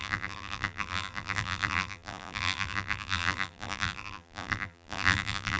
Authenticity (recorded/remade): remade